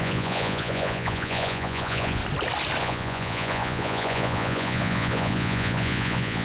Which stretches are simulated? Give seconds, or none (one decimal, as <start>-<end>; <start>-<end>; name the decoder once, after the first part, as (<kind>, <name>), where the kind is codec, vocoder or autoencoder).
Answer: 0.0-2.2 (vocoder, Vocos); 2.8-6.4